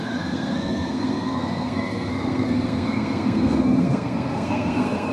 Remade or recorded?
remade